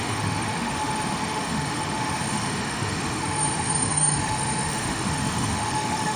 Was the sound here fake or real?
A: fake